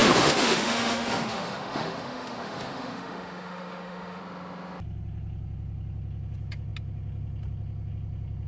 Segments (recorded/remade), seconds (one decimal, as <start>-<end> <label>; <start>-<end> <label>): 0.0-4.2 remade; 4.2-8.5 recorded